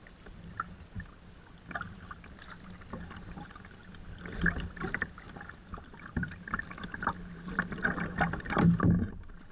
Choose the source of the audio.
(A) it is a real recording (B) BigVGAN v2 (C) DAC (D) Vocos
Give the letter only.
A